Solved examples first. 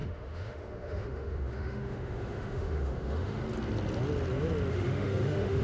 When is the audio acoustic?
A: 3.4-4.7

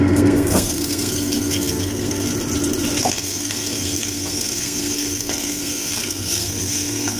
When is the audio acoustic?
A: 2.3-3.0

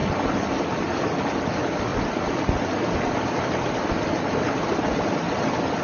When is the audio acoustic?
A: 0.0-5.8

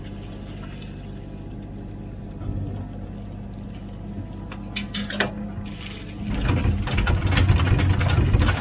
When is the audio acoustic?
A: 0.0-8.6

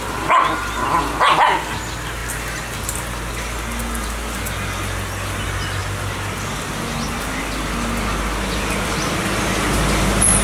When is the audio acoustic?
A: 0.0-10.4

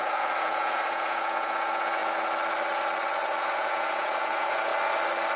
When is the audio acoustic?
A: 2.0-3.4; 4.7-5.4

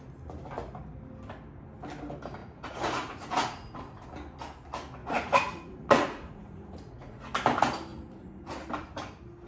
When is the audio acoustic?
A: 0.0-2.4; 4.1-5.0; 7.2-7.9; 8.5-9.5